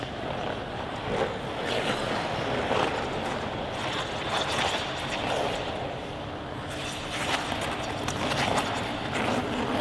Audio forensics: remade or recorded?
recorded